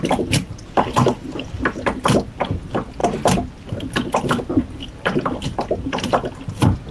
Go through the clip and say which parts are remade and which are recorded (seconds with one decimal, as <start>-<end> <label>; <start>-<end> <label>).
0.0-6.9 recorded